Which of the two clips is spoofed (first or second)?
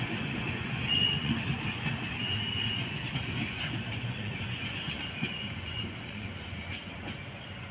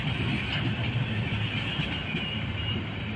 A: first